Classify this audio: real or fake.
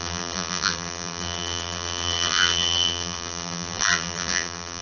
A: fake